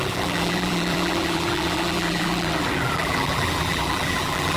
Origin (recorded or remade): remade